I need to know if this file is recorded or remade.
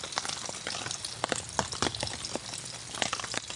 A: recorded